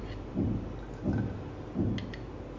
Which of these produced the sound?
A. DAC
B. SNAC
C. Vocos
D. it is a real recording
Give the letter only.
D